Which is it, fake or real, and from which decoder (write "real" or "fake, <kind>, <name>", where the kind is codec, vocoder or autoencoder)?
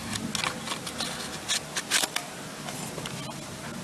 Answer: real